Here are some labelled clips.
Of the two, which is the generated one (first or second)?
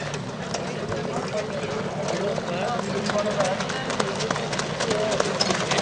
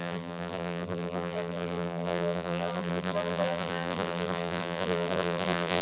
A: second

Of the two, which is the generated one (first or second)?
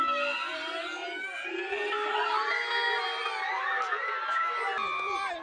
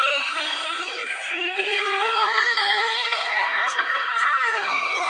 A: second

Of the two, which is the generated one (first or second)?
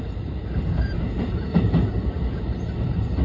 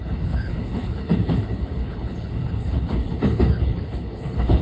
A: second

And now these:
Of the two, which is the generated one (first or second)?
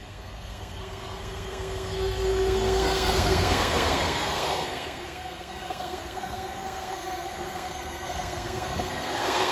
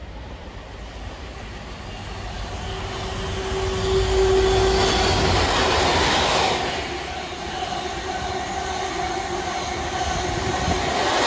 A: first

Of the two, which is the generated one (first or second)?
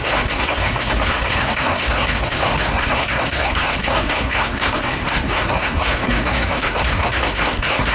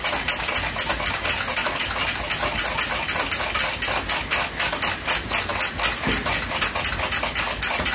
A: first